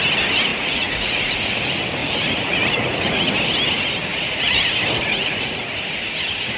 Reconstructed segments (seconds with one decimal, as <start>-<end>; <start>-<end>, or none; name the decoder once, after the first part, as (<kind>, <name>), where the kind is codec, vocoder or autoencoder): 0.5-1.2 (vocoder, Vocos); 2.0-3.3; 4.1-4.6; 5.0-5.6